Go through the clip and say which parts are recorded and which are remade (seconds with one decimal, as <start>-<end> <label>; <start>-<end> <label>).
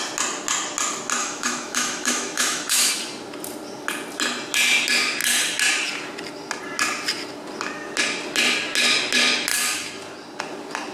0.0-1.2 recorded; 1.2-2.9 remade; 2.9-10.9 recorded